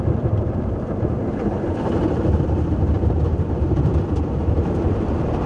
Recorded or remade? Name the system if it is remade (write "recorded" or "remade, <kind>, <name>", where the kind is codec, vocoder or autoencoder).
remade, vocoder, BigVGAN v2